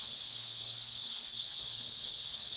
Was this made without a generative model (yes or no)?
no